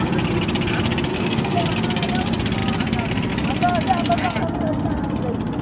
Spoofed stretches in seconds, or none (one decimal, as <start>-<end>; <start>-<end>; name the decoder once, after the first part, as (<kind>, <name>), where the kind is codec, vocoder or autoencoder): 1.1-1.6 (codec, SNAC)